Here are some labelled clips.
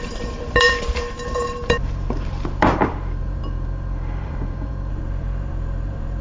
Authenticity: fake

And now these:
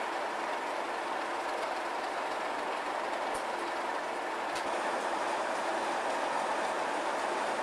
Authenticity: real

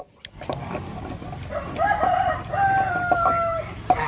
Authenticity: real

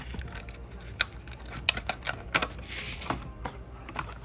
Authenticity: real